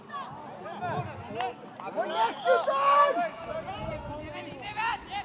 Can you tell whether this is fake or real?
real